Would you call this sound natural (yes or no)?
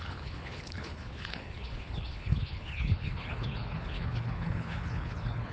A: no